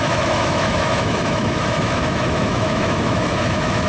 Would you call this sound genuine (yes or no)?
no